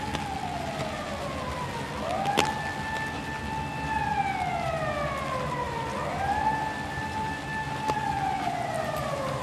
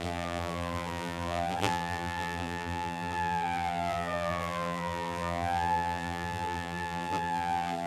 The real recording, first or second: first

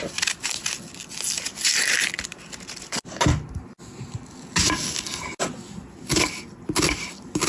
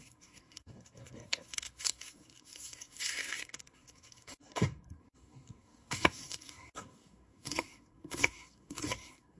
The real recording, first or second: first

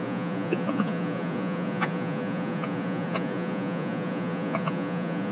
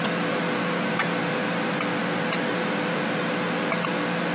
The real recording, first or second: second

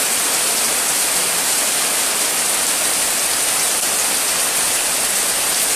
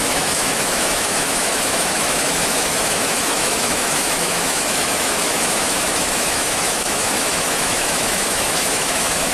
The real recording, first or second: first